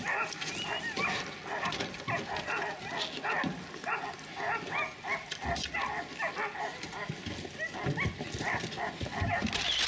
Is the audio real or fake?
real